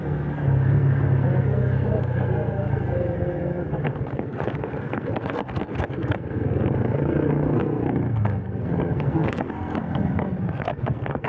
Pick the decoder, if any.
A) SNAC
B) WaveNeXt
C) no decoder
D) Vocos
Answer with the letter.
A